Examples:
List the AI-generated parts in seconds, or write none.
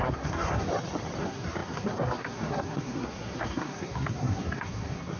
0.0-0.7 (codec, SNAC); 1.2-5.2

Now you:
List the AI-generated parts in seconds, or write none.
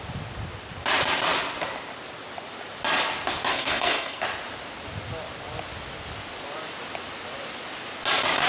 3.5-4.2 (codec, SNAC)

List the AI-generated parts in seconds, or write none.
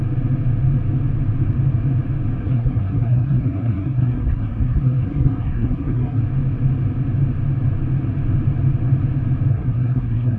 2.4-6.2 (codec, SNAC); 9.5-10.4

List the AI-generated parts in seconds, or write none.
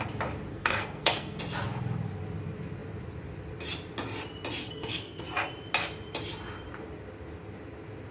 0.5-1.4 (codec, SNAC); 4.6-5.2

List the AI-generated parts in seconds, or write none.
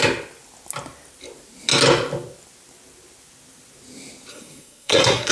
4.3-5.3 (codec, SNAC)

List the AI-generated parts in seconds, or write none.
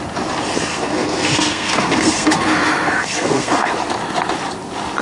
0.7-3.7 (codec, SNAC)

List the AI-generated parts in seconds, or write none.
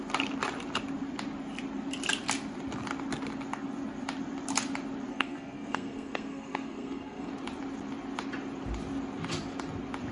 5.1-7.3 (codec, SNAC)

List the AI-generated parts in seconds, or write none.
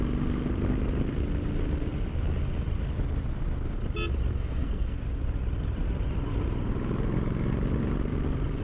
4.3-5.0 (codec, SNAC)